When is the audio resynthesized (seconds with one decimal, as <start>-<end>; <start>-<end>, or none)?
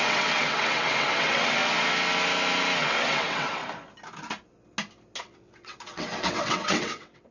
0.0-1.6; 2.8-3.6; 5.2-7.3